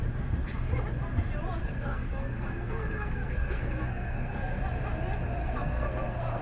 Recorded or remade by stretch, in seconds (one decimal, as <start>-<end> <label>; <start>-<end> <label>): 0.0-1.6 recorded; 1.6-4.6 remade; 4.6-5.4 recorded; 5.4-6.4 remade